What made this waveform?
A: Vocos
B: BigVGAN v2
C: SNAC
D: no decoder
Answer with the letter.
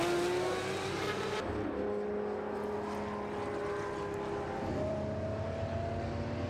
D